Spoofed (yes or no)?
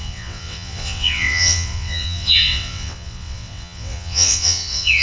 yes